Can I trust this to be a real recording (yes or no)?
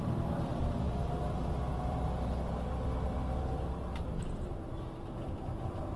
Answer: no